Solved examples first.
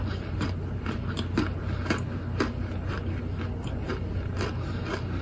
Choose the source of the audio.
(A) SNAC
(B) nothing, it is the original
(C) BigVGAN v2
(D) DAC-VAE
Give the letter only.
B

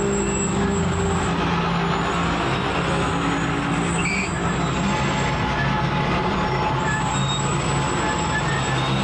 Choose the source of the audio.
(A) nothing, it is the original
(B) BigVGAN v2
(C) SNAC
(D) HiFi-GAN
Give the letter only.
A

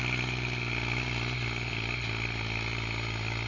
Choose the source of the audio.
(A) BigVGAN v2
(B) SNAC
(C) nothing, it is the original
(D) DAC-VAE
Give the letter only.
C